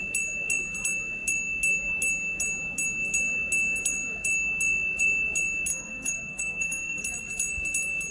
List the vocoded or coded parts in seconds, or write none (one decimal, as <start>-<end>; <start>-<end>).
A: 5.7-7.0